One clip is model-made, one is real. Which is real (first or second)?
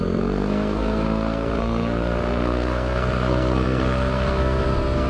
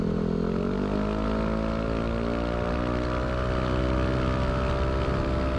second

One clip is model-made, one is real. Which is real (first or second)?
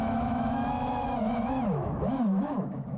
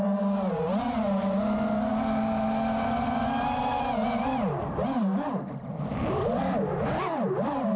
second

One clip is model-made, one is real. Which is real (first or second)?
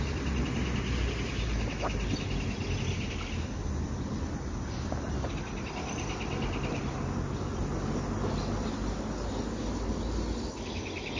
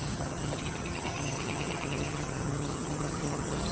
first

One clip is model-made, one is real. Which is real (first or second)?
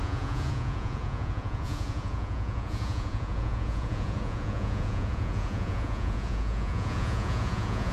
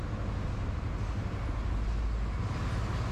second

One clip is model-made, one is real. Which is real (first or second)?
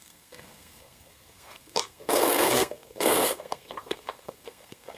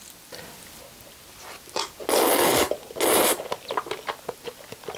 second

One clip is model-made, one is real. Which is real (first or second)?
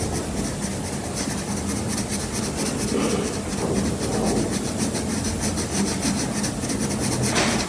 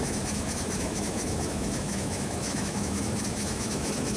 first